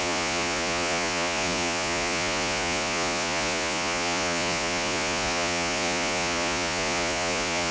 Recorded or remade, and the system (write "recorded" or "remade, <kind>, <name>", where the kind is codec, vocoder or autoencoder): remade, vocoder, Vocos